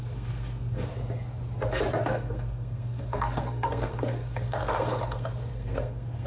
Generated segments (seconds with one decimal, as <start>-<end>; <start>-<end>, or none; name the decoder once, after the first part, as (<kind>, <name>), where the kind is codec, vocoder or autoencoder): 0.0-0.9 (codec, SNAC); 2.0-6.3